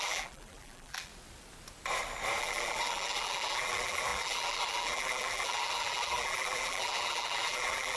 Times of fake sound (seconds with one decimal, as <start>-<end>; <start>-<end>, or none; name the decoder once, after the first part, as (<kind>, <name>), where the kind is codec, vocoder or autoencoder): 0.0-1.1 (vocoder, BigVGAN v2); 2.4-8.0